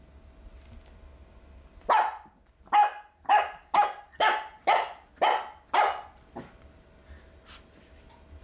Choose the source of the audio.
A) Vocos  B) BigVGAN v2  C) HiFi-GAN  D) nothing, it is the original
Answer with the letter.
D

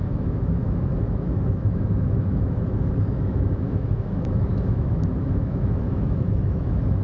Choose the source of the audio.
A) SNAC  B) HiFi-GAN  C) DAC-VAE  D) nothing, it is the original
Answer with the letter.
C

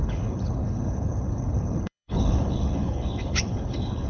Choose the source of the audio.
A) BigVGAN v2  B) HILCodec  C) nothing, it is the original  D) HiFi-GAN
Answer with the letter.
B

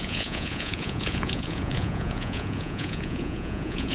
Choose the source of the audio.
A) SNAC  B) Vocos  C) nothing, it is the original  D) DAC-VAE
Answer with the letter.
B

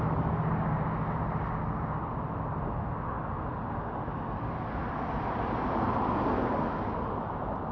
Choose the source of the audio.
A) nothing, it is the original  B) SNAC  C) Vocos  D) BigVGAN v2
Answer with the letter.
A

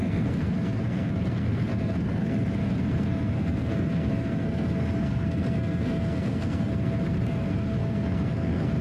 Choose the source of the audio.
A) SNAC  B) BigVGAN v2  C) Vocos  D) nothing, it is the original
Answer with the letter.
A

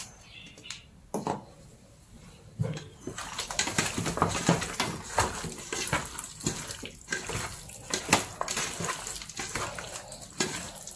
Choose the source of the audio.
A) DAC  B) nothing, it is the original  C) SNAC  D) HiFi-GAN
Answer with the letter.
B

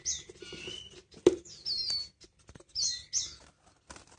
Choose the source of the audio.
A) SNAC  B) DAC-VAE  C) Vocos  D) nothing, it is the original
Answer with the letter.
D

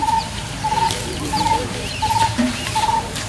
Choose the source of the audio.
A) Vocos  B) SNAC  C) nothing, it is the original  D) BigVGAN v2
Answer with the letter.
D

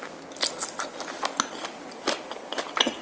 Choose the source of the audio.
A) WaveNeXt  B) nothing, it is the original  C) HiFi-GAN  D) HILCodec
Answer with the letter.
B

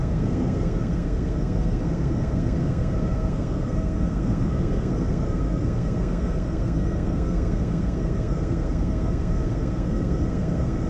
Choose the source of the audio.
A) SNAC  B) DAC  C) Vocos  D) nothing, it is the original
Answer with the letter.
A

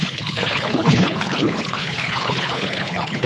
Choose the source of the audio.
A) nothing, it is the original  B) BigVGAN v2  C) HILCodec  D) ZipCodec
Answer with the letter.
C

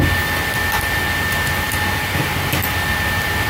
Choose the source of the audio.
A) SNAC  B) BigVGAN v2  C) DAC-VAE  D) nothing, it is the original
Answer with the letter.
B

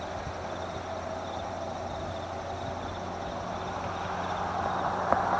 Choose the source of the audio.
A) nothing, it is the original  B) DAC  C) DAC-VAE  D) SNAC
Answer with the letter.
A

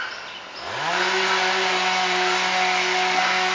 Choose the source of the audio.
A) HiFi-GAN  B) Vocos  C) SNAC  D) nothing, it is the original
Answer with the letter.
D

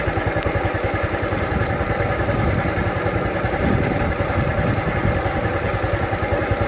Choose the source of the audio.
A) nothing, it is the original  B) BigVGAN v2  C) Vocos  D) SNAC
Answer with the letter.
A